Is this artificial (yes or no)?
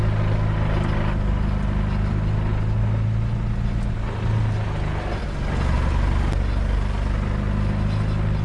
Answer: no